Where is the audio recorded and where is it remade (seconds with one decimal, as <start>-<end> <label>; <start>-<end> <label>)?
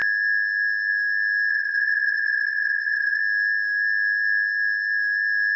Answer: 0.0-1.5 recorded; 1.5-3.2 remade; 3.2-5.6 recorded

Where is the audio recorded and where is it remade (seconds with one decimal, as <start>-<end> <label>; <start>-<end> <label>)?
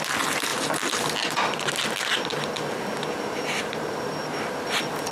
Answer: 0.0-5.1 recorded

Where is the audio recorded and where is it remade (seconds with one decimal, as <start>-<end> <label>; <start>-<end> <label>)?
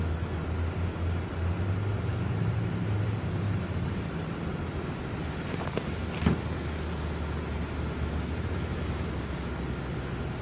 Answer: 0.0-2.1 recorded; 2.1-4.4 remade; 4.4-10.4 recorded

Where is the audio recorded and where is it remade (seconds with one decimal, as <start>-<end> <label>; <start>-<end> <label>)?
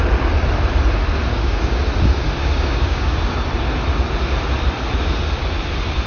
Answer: 0.0-1.3 recorded; 1.3-1.8 remade; 1.8-2.4 recorded; 2.4-3.2 remade; 3.2-6.1 recorded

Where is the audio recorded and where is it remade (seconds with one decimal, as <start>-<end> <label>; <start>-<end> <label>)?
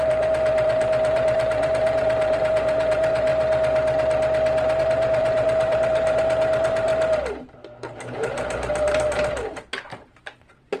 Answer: 0.0-3.3 remade; 3.3-4.8 recorded; 4.8-6.9 remade; 6.9-7.4 recorded; 7.4-10.8 remade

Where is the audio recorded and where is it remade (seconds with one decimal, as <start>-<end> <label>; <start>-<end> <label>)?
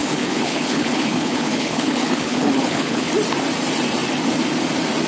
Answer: 0.0-3.1 remade; 3.1-5.1 recorded